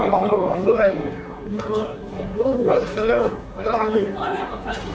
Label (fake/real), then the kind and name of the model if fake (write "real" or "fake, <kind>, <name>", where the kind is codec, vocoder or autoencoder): fake, codec, SNAC